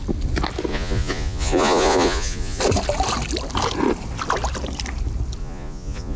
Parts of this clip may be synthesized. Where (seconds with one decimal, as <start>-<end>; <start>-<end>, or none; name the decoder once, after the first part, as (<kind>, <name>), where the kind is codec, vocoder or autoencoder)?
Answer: 0.7-2.6 (vocoder, Vocos); 5.4-6.2